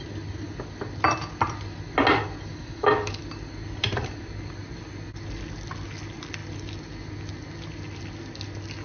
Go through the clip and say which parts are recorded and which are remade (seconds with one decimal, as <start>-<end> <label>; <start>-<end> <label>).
0.0-2.5 recorded; 2.5-3.2 remade; 3.2-8.8 recorded